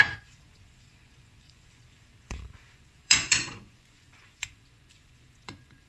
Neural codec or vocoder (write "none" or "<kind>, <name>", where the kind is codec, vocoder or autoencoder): vocoder, Vocos